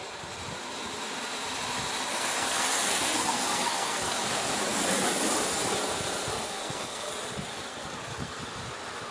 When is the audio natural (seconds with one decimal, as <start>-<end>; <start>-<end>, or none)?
0.0-2.1; 4.2-6.3; 7.1-7.5; 8.4-9.1